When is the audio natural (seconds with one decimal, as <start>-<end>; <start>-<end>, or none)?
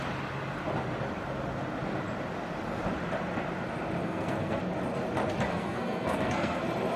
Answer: 0.0-4.0; 4.6-5.5; 6.6-7.0